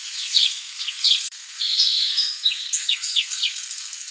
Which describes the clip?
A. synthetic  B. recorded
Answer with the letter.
A